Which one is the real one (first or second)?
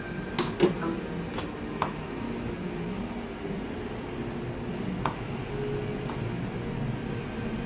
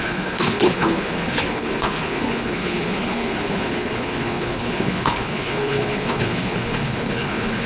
first